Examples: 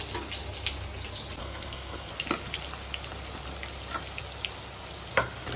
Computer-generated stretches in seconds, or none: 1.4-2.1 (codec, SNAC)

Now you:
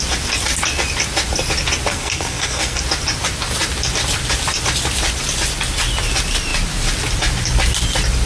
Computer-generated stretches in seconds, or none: 1.9-2.8 (codec, SNAC)